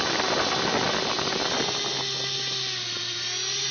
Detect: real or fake real